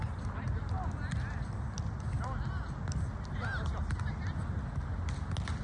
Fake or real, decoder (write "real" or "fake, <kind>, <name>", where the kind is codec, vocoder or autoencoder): real